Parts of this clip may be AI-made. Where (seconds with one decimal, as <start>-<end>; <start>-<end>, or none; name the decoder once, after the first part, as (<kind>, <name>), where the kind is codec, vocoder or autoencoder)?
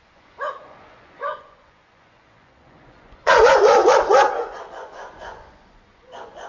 0.0-6.5 (vocoder, Vocos)